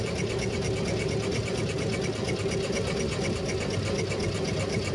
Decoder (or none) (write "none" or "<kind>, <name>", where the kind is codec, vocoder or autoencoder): none